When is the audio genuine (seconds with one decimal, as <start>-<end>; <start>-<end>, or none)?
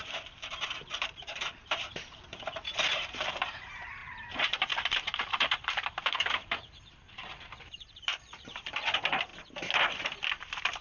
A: 9.3-10.3